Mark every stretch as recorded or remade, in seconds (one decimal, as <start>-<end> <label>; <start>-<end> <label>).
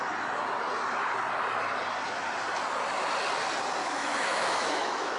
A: 0.0-3.8 recorded; 3.8-5.2 remade